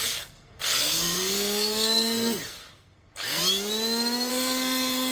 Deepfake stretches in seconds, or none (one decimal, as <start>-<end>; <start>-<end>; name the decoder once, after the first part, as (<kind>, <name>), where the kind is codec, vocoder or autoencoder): 0.0-3.4 (codec, SNAC); 4.3-5.1